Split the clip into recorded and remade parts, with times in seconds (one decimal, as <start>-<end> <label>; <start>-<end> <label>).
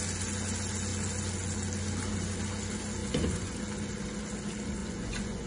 0.0-3.0 recorded; 3.0-3.6 remade; 3.6-4.8 recorded; 4.8-5.5 remade